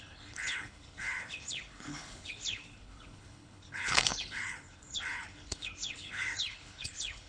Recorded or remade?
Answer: remade